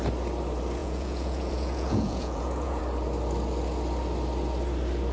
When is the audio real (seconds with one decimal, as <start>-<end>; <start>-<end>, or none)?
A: 0.0-0.8; 2.8-5.1